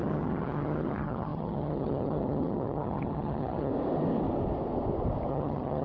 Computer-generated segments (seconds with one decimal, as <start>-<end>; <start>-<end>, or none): 0.0-3.7; 5.3-5.8